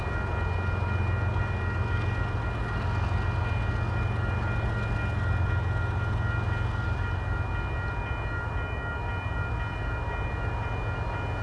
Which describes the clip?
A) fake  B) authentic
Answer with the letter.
B